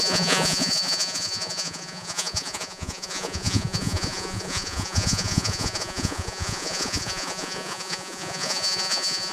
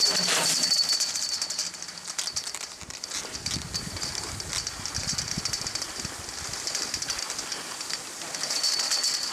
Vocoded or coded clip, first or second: first